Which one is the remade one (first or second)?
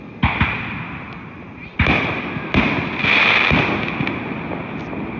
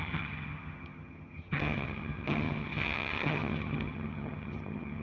second